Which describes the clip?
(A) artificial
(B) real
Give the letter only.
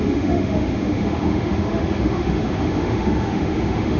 A